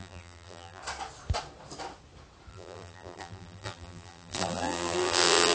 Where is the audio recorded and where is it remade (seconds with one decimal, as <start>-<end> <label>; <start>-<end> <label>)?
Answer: 0.0-0.8 remade; 0.8-2.5 recorded; 2.5-5.5 remade